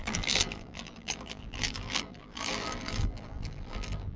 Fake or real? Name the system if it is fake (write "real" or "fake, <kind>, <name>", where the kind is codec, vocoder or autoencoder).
fake, vocoder, BigVGAN v2